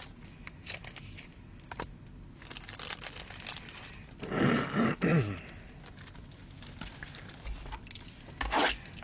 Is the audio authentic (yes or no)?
yes